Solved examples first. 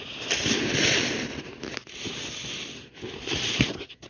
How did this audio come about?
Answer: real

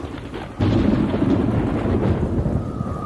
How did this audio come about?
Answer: real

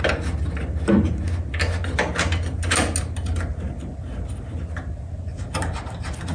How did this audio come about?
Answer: real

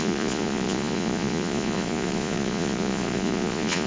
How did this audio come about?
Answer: fake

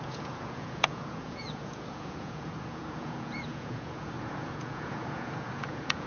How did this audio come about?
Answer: fake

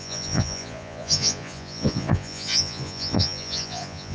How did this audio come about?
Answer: fake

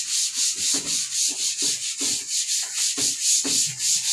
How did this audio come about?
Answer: fake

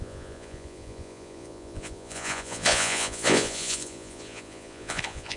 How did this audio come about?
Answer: fake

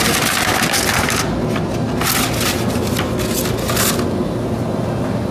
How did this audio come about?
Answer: real